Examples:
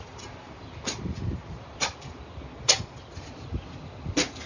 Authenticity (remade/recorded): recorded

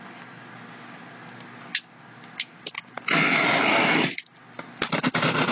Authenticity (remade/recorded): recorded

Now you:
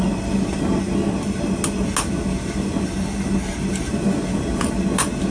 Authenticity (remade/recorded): recorded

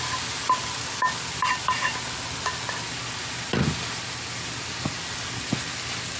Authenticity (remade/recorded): recorded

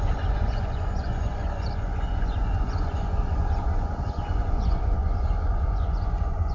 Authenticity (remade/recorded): remade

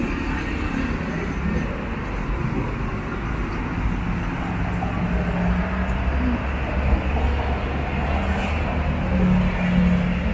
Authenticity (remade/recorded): recorded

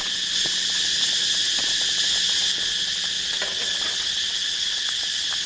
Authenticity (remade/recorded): recorded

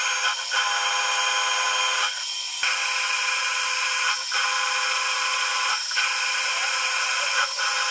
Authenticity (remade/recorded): recorded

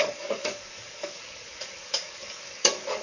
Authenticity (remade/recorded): remade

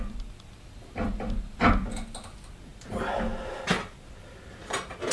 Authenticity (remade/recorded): recorded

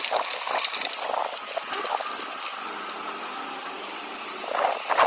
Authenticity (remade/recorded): recorded